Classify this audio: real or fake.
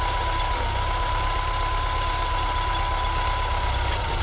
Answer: real